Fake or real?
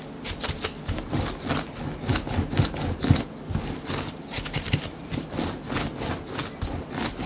real